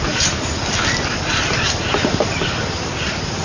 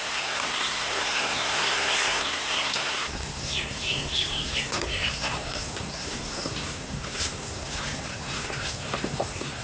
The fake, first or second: second